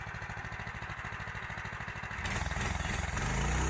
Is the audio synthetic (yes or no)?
no